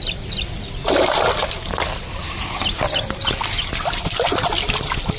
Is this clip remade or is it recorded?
recorded